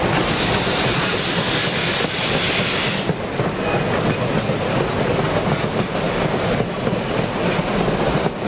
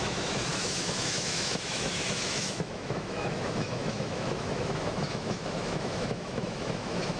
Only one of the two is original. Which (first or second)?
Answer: first